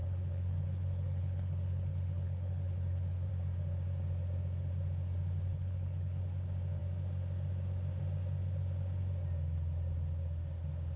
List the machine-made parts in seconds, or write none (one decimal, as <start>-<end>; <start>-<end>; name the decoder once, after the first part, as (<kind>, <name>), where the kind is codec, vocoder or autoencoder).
0.0-3.3 (codec, HILCodec); 5.5-6.2